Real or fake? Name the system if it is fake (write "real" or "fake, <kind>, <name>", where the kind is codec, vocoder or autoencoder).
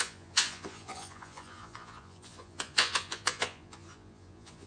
fake, vocoder, Vocos